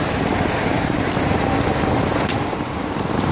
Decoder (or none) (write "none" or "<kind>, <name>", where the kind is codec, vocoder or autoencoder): none